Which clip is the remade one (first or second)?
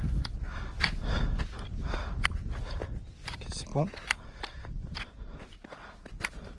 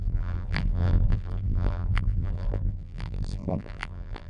second